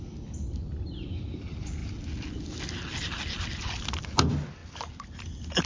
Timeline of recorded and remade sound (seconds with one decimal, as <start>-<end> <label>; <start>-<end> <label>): 0.0-5.7 recorded